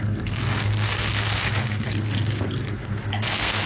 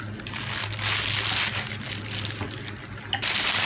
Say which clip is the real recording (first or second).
second